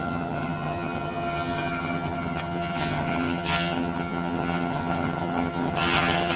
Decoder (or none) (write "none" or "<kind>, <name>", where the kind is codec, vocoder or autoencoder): vocoder, HiFi-GAN